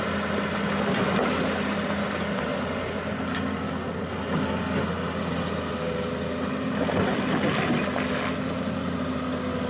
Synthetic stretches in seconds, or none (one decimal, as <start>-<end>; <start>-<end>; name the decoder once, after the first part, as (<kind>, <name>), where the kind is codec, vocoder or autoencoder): none